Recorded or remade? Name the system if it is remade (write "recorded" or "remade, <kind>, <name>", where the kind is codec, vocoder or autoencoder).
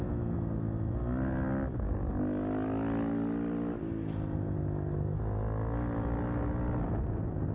recorded